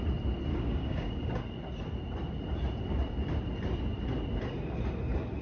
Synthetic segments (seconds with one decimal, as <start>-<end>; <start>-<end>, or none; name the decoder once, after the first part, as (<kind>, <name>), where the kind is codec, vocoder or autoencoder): 0.5-1.4 (codec, DAC)